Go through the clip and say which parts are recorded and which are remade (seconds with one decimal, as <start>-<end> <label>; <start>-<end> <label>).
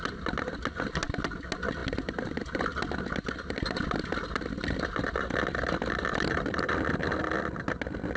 0.0-8.2 recorded